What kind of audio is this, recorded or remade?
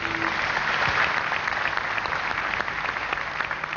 recorded